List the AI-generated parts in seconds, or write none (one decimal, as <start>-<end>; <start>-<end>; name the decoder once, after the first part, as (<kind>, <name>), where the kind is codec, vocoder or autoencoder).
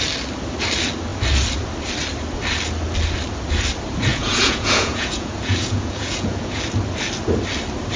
4.1-6.6 (vocoder, Vocos)